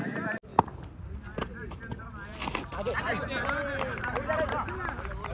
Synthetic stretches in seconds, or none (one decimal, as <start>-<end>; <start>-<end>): none